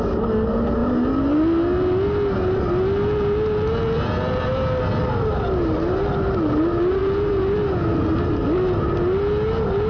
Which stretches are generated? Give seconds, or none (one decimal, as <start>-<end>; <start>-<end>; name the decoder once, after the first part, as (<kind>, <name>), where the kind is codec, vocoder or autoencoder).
none

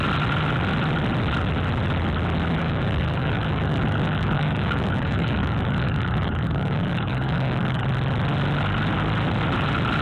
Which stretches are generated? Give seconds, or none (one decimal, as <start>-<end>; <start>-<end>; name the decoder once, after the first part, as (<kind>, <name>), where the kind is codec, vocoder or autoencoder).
2.6-7.8 (codec, DAC)

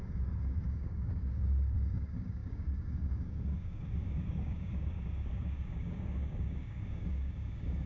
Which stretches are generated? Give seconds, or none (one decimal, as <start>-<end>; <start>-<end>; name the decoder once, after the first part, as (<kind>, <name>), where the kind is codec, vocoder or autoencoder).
0.0-7.9 (codec, DAC)

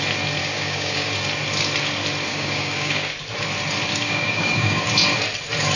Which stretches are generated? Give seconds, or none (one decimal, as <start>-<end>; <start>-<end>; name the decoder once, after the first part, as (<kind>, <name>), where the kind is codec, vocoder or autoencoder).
0.4-1.1 (codec, DAC); 2.3-3.1; 3.9-4.9

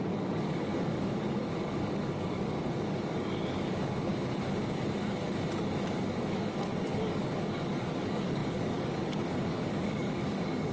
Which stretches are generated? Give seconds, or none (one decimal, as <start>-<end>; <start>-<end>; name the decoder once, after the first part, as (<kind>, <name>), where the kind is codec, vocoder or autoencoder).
0.0-4.1 (codec, DAC); 5.8-10.7

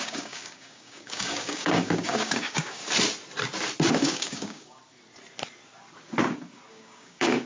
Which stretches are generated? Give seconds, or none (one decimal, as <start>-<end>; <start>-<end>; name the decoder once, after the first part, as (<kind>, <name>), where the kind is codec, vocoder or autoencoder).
0.0-2.8 (codec, DAC); 3.9-4.8; 6.7-7.5

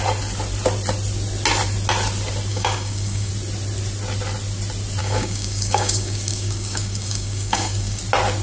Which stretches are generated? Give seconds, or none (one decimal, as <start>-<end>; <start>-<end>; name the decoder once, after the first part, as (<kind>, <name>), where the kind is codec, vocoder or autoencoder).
2.5-3.3 (codec, DAC); 5.0-8.0

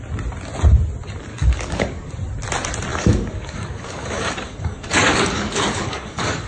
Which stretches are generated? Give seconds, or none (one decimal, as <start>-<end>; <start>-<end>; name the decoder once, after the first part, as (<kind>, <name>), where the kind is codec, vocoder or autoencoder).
1.3-2.1 (codec, DAC); 2.9-6.5